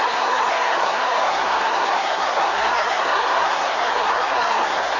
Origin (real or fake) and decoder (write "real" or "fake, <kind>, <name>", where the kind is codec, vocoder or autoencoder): fake, codec, SNAC